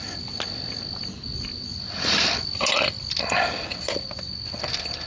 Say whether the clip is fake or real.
real